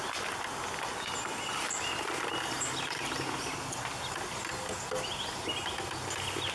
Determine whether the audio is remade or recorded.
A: recorded